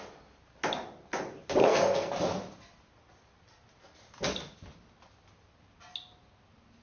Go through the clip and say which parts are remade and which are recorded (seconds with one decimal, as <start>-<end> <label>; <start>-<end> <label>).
0.0-1.6 recorded; 1.6-2.1 remade; 2.1-6.8 recorded